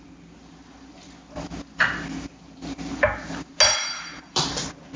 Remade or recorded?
recorded